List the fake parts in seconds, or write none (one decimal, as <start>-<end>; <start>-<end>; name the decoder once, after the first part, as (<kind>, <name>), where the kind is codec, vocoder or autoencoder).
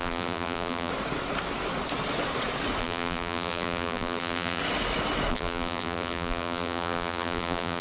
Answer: 0.0-0.9 (vocoder, BigVGAN v2); 2.8-4.6; 5.3-7.8